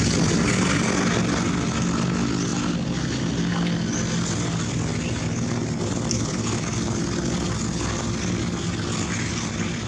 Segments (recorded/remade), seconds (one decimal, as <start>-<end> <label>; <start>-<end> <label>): 0.0-9.9 recorded